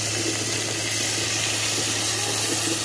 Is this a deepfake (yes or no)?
no